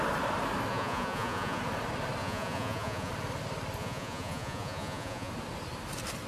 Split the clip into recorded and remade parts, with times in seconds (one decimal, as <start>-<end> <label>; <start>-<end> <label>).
0.0-0.7 recorded; 0.7-1.6 remade; 1.6-2.2 recorded; 2.2-3.1 remade; 3.1-3.8 recorded; 3.8-5.3 remade; 5.3-6.3 recorded